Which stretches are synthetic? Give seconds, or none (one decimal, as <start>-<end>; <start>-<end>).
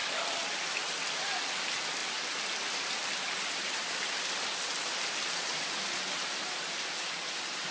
0.0-0.7